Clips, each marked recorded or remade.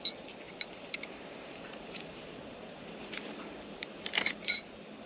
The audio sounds remade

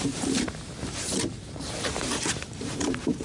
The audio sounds remade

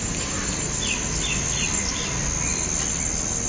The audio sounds recorded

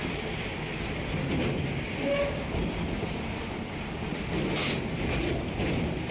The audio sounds recorded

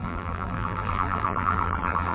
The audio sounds remade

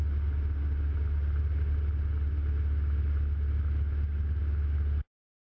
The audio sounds recorded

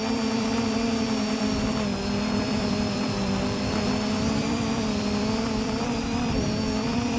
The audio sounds remade